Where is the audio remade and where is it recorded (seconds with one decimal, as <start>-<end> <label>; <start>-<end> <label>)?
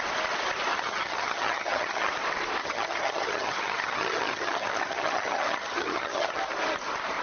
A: 0.0-0.7 recorded; 0.7-2.1 remade; 2.1-2.6 recorded; 2.6-6.4 remade; 6.4-7.2 recorded